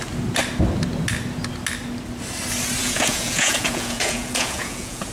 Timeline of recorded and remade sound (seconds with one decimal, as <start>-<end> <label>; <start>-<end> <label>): 0.0-2.8 recorded; 2.8-5.1 remade